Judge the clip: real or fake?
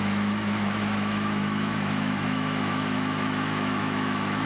fake